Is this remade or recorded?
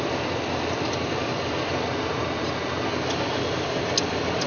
recorded